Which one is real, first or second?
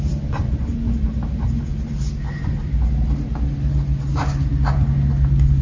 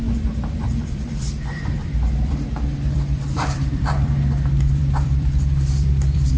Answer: first